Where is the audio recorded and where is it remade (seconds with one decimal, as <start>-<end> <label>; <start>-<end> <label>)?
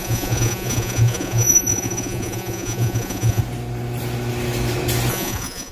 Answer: 0.0-3.4 remade; 3.4-5.1 recorded; 5.1-5.7 remade